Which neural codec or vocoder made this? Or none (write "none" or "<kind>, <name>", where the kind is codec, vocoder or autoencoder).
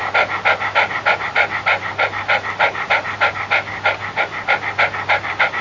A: none